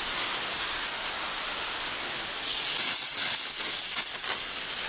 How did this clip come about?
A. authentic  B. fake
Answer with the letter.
A